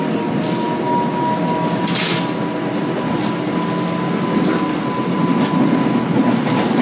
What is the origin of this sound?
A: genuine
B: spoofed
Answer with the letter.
A